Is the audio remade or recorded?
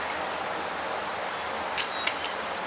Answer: recorded